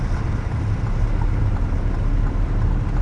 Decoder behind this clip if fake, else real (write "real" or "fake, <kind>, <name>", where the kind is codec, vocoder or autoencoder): real